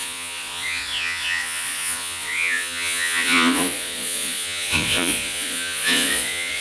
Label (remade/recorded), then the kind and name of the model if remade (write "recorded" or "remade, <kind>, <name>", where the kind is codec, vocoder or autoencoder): remade, vocoder, Vocos